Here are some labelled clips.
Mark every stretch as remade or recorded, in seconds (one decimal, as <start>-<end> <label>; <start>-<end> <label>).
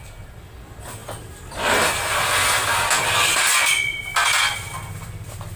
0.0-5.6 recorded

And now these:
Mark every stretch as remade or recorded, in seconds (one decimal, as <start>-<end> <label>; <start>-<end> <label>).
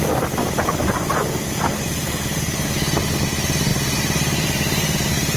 0.0-3.7 recorded; 3.7-5.4 remade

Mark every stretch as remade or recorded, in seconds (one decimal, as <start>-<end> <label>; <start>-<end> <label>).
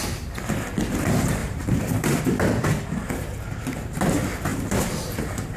0.0-1.4 recorded; 1.4-2.2 remade; 2.2-4.5 recorded; 4.5-5.6 remade